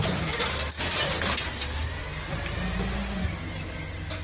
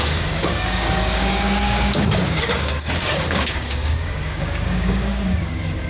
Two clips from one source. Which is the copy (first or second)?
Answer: second